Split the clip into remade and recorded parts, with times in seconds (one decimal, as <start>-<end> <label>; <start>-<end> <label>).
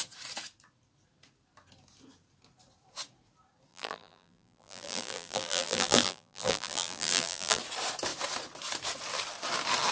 0.0-3.7 recorded; 3.7-7.6 remade; 7.6-9.9 recorded